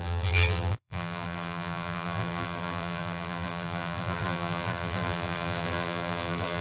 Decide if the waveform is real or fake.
fake